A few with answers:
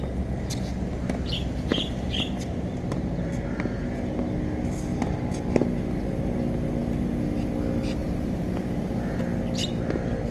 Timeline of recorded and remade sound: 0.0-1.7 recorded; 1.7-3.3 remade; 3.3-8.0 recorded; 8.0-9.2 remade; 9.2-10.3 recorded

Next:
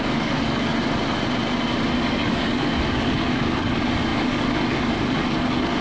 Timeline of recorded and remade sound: 0.0-0.7 remade; 0.7-2.1 recorded; 2.1-5.8 remade

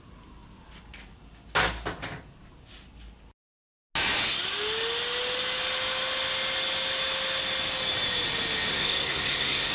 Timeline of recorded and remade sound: 0.0-8.7 recorded; 8.7-9.7 remade

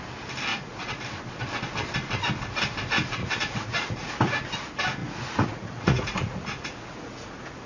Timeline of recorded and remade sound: 0.0-0.5 recorded; 0.5-1.0 remade; 1.0-3.2 recorded; 3.2-4.1 remade; 4.1-5.0 recorded; 5.0-7.7 remade

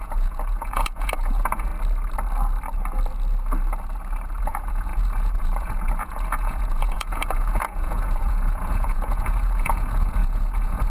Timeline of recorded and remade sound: 0.0-1.7 remade; 1.7-4.4 recorded; 4.4-10.9 remade